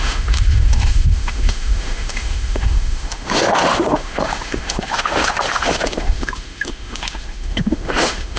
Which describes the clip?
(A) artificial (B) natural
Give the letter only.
A